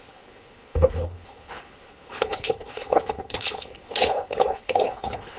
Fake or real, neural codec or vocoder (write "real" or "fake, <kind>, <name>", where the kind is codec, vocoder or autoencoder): fake, codec, HILCodec